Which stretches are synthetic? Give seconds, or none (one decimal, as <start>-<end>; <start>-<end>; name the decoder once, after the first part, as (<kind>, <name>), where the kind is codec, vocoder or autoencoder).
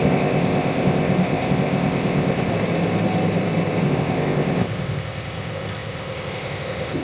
0.0-2.5 (codec, ZipCodec); 3.8-7.0